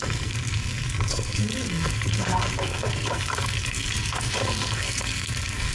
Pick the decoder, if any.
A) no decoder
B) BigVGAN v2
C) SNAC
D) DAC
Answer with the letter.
C